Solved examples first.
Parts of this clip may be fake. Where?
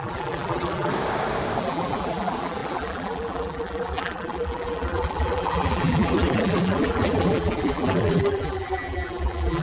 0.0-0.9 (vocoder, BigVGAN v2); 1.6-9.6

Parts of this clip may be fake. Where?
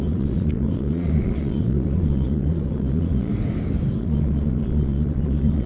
0.0-3.3 (vocoder, Vocos); 4.0-5.7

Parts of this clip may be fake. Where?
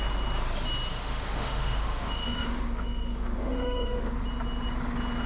0.9-4.1 (autoencoder, DAC-VAE)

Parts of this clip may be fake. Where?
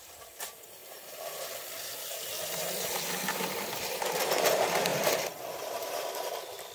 0.8-1.9 (vocoder, BigVGAN v2); 4.9-6.0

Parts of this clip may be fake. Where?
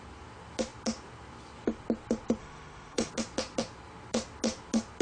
2.4-3.1 (autoencoder, DAC-VAE)